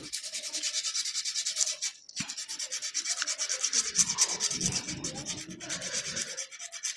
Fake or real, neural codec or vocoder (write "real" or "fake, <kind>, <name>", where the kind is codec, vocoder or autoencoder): real